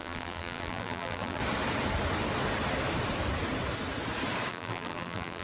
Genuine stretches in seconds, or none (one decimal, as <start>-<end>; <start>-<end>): 1.4-4.5